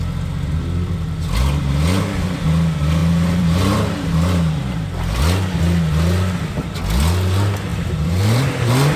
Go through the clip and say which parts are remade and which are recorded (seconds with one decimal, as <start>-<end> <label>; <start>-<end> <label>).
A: 0.0-3.0 recorded; 3.0-5.2 remade; 5.2-7.7 recorded; 7.7-8.4 remade; 8.4-9.0 recorded